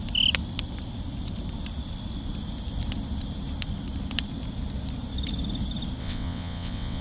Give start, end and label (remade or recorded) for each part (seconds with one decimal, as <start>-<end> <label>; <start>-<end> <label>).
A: 0.0-6.0 recorded; 6.0-7.0 remade